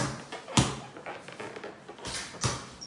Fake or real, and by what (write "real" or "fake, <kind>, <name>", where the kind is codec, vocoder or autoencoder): real